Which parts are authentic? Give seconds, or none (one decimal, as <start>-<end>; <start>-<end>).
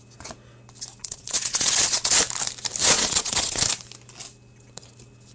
0.0-1.0; 2.1-2.8; 3.6-5.3